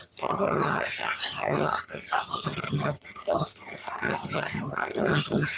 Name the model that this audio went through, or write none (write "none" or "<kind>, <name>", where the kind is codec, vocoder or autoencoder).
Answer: vocoder, HiFi-GAN